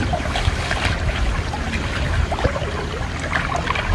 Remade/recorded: recorded